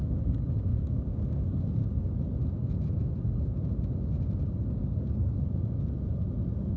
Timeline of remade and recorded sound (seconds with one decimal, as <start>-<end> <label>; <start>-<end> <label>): 0.0-0.7 recorded; 0.7-2.1 remade; 2.1-4.8 recorded; 4.8-5.4 remade; 5.4-6.8 recorded

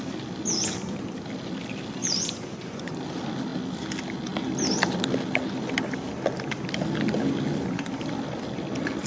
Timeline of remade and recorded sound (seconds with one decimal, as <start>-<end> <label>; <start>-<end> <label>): 0.0-2.0 recorded; 2.0-2.9 remade; 2.9-9.1 recorded

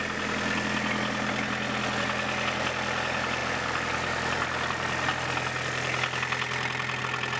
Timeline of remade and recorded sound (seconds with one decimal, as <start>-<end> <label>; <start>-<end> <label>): 0.0-7.4 recorded

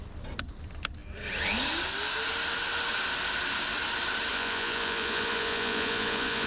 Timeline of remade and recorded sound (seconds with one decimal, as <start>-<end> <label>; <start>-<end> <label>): 0.0-4.3 recorded; 4.3-6.5 remade

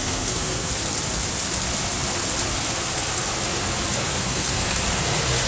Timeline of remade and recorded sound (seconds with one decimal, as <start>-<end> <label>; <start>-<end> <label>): 0.0-0.7 remade; 0.7-4.0 recorded; 4.0-4.7 remade; 4.7-5.5 recorded

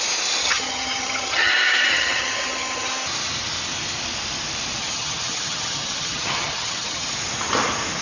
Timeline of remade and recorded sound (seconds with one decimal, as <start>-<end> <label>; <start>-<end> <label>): 0.0-0.4 recorded; 0.4-1.5 remade; 1.5-1.9 recorded; 1.9-2.9 remade; 2.9-4.8 recorded; 4.8-7.1 remade; 7.1-8.0 recorded

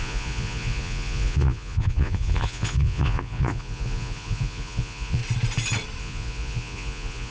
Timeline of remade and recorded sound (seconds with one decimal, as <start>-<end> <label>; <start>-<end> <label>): 0.0-5.2 remade; 5.2-6.0 recorded; 6.0-7.3 remade